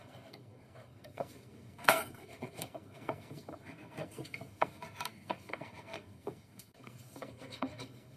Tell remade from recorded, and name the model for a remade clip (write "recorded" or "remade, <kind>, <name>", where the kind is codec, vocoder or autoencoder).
remade, codec, SNAC